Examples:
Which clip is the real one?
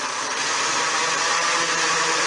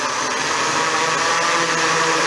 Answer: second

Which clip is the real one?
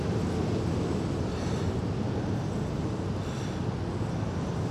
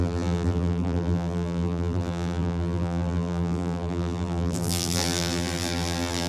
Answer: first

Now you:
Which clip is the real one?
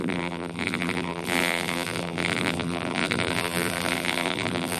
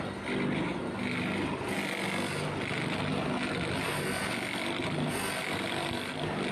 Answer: second